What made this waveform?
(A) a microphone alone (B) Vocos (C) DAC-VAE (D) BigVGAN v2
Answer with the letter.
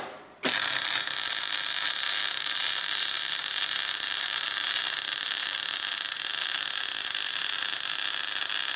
D